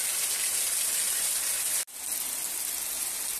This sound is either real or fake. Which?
real